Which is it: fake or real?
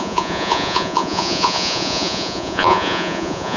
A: fake